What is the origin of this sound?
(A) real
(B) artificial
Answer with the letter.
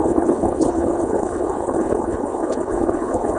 B